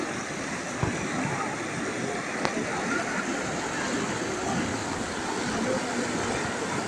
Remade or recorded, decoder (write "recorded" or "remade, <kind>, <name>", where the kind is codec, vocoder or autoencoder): recorded